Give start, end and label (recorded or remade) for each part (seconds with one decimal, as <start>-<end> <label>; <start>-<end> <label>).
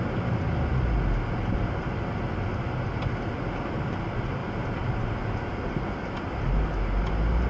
0.0-7.5 recorded